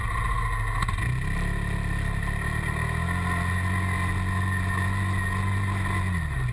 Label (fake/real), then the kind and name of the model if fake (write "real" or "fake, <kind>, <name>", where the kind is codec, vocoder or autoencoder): real